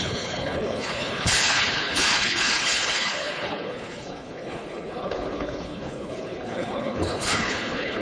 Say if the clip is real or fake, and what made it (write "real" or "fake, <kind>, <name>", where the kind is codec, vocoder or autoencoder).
fake, codec, HILCodec